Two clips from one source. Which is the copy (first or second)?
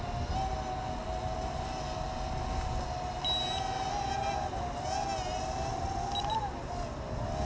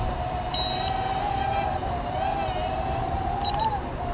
second